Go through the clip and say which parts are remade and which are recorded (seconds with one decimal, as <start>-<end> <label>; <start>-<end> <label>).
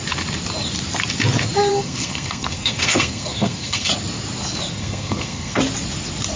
0.0-1.7 recorded; 1.7-3.9 remade; 3.9-4.7 recorded; 4.7-5.6 remade; 5.6-6.4 recorded